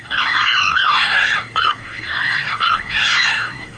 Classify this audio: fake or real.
fake